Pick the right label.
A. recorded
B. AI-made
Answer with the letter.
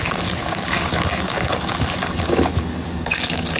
B